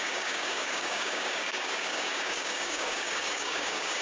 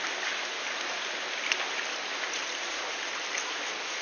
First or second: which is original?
second